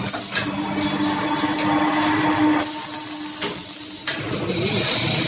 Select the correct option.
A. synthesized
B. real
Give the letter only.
B